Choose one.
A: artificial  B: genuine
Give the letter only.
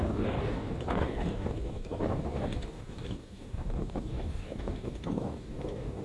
A